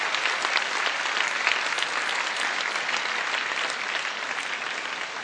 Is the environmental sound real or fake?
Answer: real